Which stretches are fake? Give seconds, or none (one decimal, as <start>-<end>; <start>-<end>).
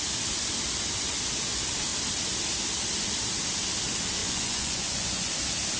4.2-5.3